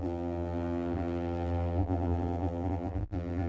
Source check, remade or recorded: remade